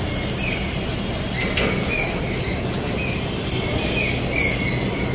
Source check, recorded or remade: recorded